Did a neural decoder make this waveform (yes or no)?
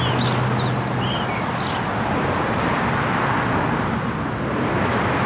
no